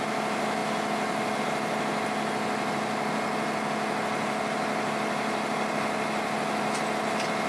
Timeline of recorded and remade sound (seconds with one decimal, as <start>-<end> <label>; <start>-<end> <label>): 0.0-7.5 recorded